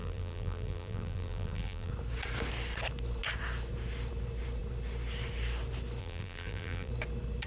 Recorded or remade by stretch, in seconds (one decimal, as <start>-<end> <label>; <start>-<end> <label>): 0.0-1.9 remade; 1.9-6.0 recorded; 6.0-6.9 remade; 6.9-7.5 recorded

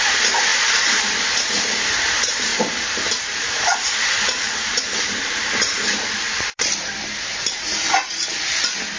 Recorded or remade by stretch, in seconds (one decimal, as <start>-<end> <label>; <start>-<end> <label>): 0.0-6.8 remade; 6.8-9.0 recorded

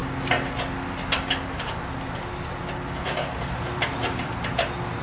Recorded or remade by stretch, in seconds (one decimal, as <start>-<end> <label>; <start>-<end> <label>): 0.0-3.0 recorded; 3.0-4.3 remade; 4.3-5.0 recorded